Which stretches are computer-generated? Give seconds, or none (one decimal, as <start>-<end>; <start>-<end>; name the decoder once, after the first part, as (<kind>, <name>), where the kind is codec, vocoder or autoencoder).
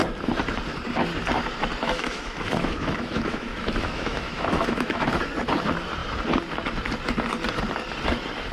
1.8-5.3 (autoencoder, DAC-VAE)